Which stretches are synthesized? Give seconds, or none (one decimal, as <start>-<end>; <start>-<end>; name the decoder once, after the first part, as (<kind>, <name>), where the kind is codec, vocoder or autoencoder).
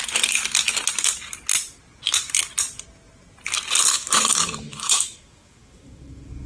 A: 3.9-6.5 (autoencoder, DAC-VAE)